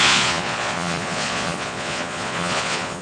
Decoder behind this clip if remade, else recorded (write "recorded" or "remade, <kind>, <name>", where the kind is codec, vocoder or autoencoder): remade, vocoder, Vocos